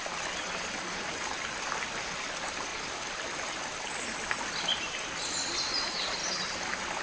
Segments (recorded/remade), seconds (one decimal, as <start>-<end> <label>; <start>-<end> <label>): 0.0-7.0 recorded